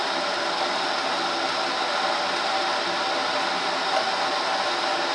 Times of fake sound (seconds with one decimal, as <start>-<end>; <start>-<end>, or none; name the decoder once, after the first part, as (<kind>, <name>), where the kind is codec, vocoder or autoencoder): none